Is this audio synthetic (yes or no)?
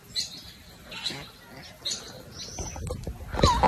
no